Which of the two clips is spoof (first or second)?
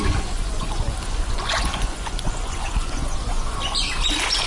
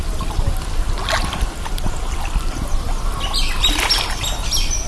first